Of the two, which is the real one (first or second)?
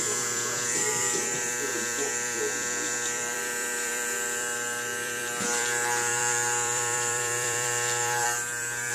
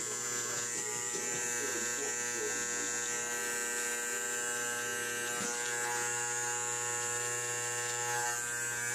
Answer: second